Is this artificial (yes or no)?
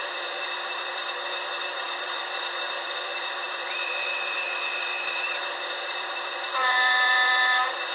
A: yes